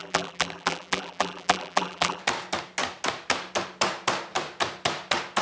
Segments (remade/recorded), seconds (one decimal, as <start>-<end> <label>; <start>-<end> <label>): 0.0-2.2 remade; 2.2-5.4 recorded